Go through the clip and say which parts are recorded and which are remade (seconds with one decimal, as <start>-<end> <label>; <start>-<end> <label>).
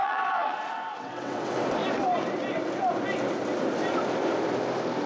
0.0-1.8 remade; 1.8-5.1 recorded